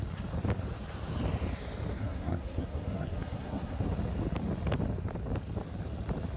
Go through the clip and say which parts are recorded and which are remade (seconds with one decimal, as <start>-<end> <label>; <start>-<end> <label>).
0.0-1.9 recorded; 1.9-3.9 remade; 3.9-6.4 recorded